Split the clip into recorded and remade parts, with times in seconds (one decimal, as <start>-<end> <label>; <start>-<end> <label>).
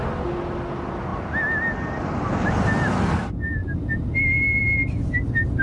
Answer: 0.0-5.6 recorded